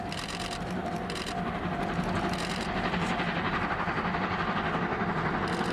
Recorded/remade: recorded